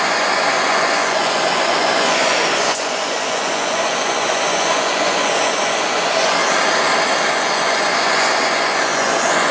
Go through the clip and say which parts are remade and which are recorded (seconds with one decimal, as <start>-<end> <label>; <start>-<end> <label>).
0.0-6.4 remade; 6.4-7.3 recorded; 7.3-9.5 remade